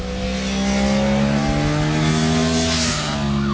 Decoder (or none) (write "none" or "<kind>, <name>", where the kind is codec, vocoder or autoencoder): none